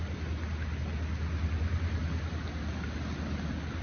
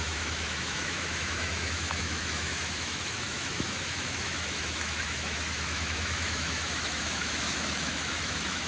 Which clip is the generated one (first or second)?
second